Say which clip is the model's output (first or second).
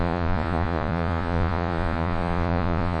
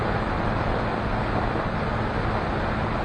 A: first